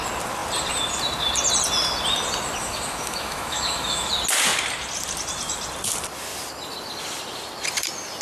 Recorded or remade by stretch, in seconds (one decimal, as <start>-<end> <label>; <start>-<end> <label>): 0.0-2.6 recorded; 2.6-4.1 remade; 4.1-8.2 recorded